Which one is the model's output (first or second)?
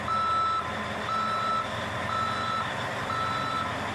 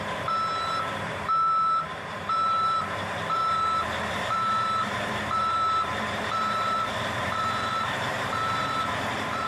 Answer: second